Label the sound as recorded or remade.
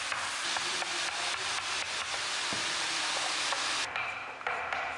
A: recorded